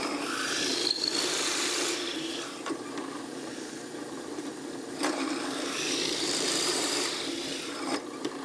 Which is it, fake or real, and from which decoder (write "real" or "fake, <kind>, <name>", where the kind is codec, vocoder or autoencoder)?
fake, vocoder, BigVGAN v2